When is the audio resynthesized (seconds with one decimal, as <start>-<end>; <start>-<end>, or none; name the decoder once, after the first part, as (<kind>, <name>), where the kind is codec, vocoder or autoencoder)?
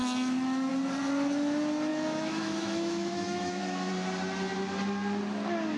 0.0-0.7 (autoencoder, DAC-VAE); 1.9-3.9